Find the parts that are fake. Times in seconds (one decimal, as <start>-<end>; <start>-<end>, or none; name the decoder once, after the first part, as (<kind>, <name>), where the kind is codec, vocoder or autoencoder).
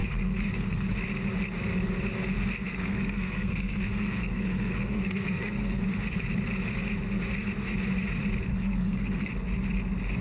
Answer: 0.0-0.9 (codec, SNAC); 2.7-5.8; 8.5-9.3